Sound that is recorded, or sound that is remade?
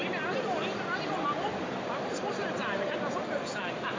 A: recorded